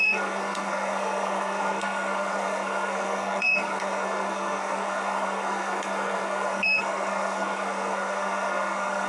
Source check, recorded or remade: remade